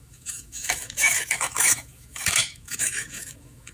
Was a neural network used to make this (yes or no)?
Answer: yes